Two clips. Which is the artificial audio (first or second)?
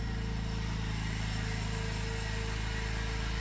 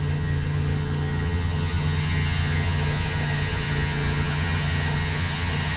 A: second